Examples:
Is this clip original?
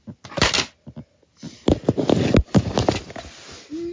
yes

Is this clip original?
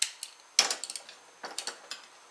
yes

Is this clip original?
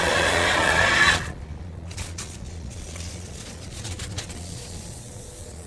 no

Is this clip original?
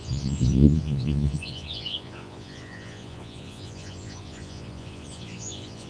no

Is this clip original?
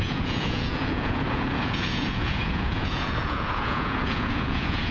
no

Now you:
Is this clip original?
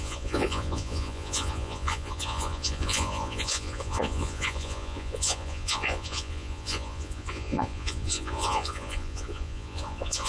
no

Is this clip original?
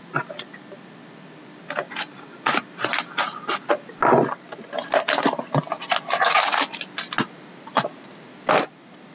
yes